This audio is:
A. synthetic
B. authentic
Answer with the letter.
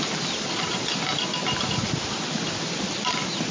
B